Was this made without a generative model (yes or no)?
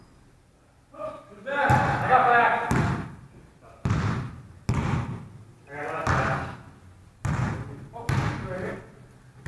yes